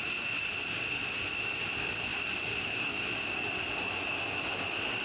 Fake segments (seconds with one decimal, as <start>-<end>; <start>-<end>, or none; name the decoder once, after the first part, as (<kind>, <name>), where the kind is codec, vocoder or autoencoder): none